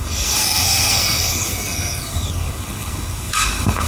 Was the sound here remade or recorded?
remade